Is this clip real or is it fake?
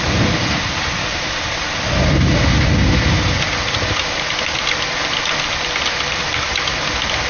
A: real